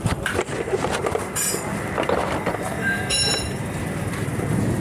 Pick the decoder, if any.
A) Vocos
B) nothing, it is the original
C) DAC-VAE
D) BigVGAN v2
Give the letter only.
D